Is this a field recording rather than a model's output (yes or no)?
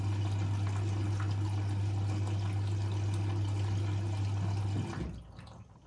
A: yes